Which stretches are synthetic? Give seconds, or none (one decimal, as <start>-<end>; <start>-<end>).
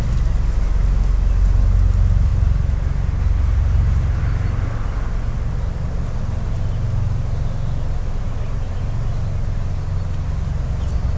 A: none